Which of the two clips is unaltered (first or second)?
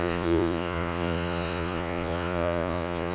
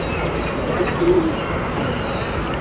second